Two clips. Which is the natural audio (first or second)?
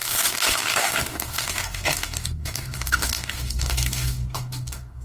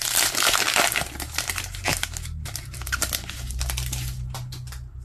second